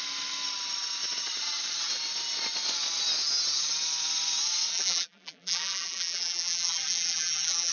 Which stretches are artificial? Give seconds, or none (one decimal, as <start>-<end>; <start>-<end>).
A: 4.7-7.7